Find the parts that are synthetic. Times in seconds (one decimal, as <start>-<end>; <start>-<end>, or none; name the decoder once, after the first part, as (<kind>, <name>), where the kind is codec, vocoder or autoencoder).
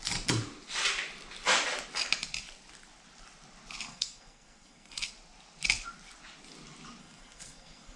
3.9-5.1 (codec, SNAC); 7.0-8.0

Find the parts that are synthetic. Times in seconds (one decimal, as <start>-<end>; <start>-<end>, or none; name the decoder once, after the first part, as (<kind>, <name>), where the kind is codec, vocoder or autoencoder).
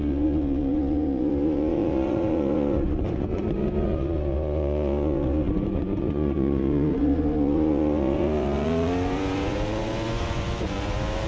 0.0-11.3 (vocoder, Vocos)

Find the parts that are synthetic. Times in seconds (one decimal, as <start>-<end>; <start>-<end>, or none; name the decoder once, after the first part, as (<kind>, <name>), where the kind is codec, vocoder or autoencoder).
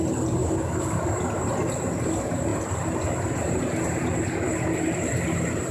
0.4-1.2 (codec, DAC)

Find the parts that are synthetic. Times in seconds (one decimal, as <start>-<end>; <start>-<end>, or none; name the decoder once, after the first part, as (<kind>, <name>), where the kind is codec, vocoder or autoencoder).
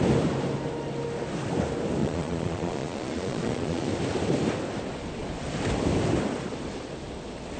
2.0-3.9 (vocoder, Vocos)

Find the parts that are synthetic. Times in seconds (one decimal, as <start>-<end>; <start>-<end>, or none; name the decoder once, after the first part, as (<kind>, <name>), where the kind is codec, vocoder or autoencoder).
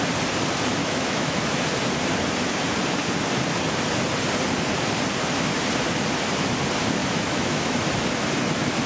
0.8-1.4 (autoencoder, DAC-VAE); 7.0-7.8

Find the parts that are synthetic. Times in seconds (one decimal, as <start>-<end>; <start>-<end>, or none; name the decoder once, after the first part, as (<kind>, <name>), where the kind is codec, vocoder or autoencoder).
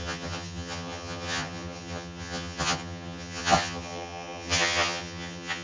0.0-5.6 (vocoder, HiFi-GAN)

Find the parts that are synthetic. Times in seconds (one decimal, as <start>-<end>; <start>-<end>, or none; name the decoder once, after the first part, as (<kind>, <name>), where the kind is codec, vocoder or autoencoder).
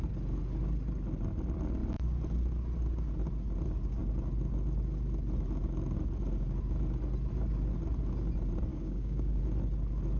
8.7-9.4 (codec, DAC)